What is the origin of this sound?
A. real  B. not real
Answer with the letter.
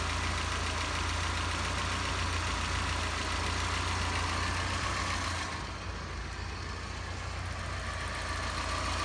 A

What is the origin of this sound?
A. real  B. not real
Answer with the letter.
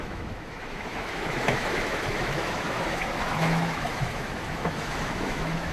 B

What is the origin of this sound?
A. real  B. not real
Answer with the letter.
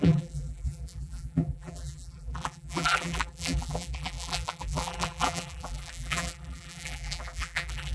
B